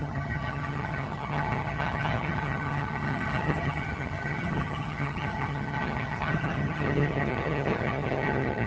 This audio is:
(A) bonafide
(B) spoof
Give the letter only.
B